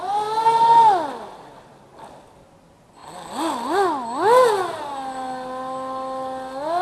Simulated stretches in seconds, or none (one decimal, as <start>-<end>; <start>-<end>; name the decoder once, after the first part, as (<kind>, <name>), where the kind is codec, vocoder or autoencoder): none